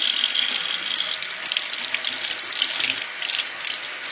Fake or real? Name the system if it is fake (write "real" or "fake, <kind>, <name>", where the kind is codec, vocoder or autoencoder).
real